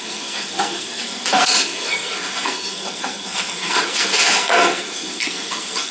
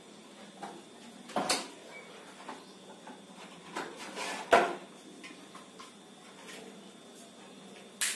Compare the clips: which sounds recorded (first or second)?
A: second